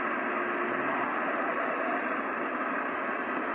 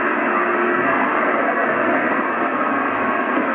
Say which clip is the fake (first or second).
second